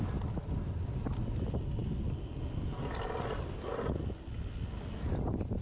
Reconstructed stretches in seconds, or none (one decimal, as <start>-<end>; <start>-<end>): none